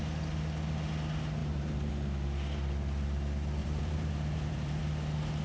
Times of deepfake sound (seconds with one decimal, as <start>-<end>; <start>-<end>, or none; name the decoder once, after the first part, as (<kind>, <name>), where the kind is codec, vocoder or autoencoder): 1.4-1.9 (vocoder, BigVGAN v2); 3.6-4.8

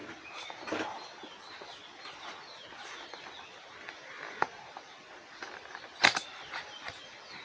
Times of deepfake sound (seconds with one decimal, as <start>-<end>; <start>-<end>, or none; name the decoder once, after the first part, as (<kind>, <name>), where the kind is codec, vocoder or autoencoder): 4.4-7.4 (vocoder, BigVGAN v2)